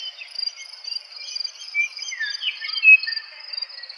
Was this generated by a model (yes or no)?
no